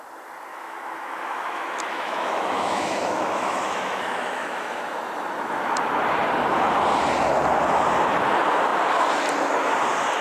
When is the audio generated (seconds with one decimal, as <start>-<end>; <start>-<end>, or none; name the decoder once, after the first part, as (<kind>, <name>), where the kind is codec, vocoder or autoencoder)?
0.5-5.0 (autoencoder, DAC-VAE)

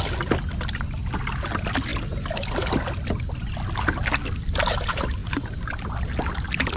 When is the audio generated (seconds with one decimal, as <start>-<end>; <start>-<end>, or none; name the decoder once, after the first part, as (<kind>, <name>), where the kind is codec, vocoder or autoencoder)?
none

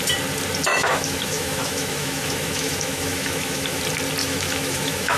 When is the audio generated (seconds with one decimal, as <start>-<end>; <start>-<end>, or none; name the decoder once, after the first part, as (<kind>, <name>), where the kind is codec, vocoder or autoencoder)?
0.7-3.8 (autoencoder, DAC-VAE); 4.2-5.2

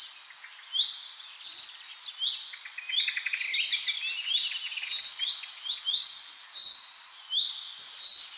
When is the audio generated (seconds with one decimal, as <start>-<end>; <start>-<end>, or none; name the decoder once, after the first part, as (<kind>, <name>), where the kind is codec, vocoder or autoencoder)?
none

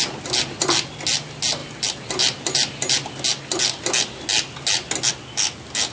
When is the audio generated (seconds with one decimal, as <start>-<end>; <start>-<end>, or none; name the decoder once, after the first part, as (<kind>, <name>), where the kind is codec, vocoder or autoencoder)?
none

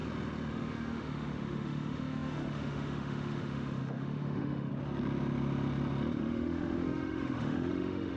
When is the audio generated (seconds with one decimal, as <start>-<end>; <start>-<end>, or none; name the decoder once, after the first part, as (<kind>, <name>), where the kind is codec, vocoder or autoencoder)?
0.5-4.7 (autoencoder, DAC-VAE); 6.2-8.2

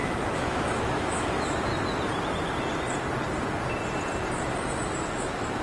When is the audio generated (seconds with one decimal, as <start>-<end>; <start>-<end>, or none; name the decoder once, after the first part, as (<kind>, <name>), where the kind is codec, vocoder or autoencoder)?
0.0-1.7 (autoencoder, DAC-VAE); 5.1-5.6